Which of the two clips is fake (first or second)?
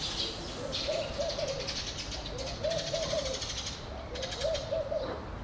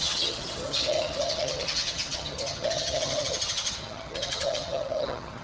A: second